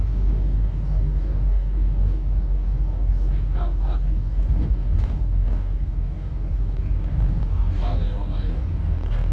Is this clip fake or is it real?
fake